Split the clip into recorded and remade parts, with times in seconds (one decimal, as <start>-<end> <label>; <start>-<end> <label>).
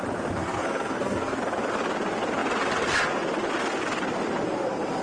0.0-0.4 recorded; 0.4-1.4 remade; 1.4-5.0 recorded